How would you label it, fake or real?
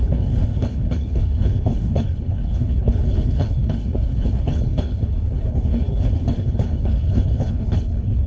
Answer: fake